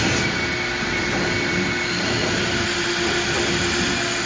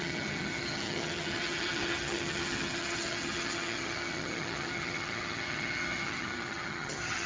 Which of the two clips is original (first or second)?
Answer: first